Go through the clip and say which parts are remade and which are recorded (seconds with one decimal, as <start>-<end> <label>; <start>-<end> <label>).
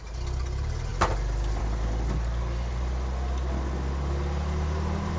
0.0-5.2 recorded